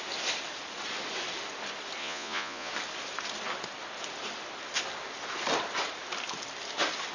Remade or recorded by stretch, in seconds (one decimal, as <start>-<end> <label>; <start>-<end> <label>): 0.0-2.0 recorded; 2.0-2.7 remade; 2.7-7.1 recorded